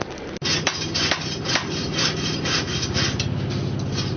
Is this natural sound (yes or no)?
yes